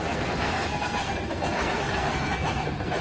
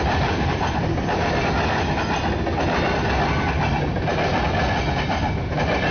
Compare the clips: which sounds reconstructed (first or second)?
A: first